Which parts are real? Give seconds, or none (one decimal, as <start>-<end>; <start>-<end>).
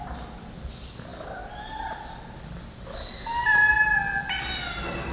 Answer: 0.0-5.1